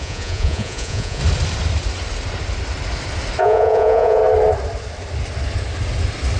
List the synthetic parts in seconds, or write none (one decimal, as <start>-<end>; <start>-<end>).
0.0-1.2; 3.4-4.2

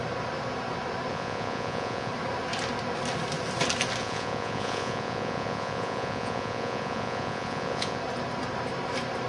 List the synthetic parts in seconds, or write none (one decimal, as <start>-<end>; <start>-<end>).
1.1-2.1; 4.0-8.0

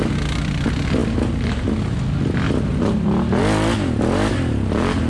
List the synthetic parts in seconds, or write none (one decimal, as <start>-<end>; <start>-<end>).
none

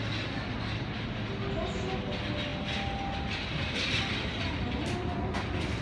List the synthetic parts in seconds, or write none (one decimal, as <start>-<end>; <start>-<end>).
none

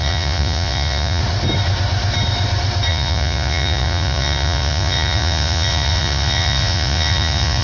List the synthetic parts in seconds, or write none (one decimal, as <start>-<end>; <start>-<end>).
0.0-1.2; 2.9-7.6

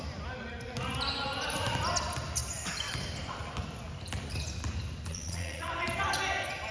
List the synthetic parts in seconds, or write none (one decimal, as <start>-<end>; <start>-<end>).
5.1-5.7